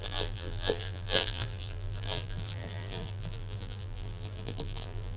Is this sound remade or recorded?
remade